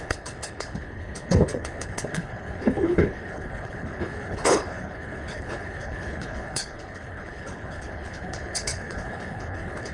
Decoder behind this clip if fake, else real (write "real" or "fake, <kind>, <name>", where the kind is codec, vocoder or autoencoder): fake, codec, HILCodec